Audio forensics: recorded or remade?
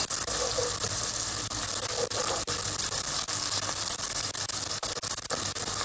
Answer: recorded